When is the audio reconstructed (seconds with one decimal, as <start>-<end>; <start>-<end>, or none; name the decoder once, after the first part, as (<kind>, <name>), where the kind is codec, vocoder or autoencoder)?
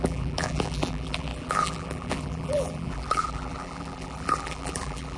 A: 0.0-5.2 (vocoder, BigVGAN v2)